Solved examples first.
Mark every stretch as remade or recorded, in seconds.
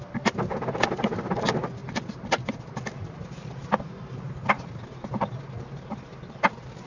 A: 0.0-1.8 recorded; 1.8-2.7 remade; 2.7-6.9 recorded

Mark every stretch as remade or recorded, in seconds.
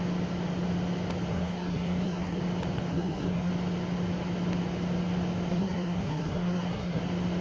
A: 0.0-1.3 recorded; 1.3-2.4 remade; 2.4-2.9 recorded; 2.9-3.5 remade; 3.5-5.5 recorded; 5.5-7.0 remade; 7.0-7.4 recorded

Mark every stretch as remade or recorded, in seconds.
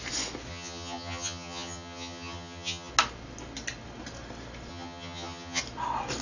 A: 0.0-0.5 recorded; 0.5-2.9 remade; 2.9-4.7 recorded; 4.7-5.6 remade; 5.6-6.2 recorded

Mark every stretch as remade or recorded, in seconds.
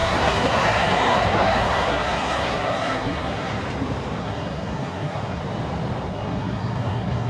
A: 0.0-3.6 remade; 3.6-4.2 recorded; 4.2-5.4 remade; 5.4-6.1 recorded; 6.1-7.3 remade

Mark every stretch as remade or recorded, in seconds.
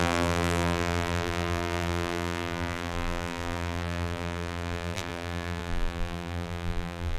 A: 0.0-7.2 remade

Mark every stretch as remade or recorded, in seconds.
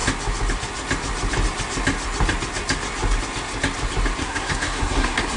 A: 0.0-4.2 recorded; 4.2-5.4 remade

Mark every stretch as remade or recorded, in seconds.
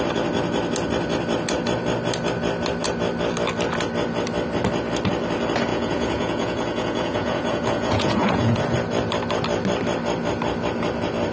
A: 0.0-5.7 recorded; 5.7-8.6 remade; 8.6-11.3 recorded